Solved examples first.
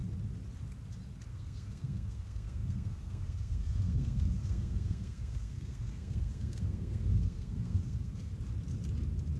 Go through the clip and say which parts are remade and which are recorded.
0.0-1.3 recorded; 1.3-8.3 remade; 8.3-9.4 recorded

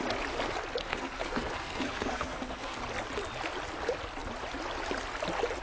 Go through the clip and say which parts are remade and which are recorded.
0.0-0.8 recorded; 0.8-2.8 remade; 2.8-5.6 recorded

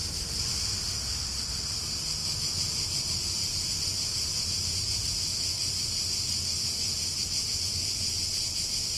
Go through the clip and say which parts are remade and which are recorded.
0.0-0.6 recorded; 0.6-2.2 remade; 2.2-2.7 recorded; 2.7-9.0 remade

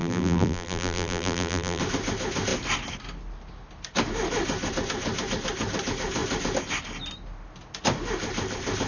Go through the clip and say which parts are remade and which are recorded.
0.0-1.8 remade; 1.8-8.9 recorded